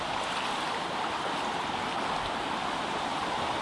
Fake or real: real